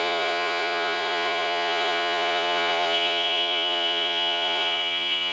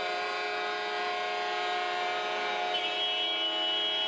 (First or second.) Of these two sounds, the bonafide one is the second